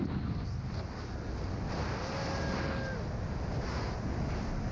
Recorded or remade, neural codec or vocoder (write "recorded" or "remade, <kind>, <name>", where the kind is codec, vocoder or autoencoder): recorded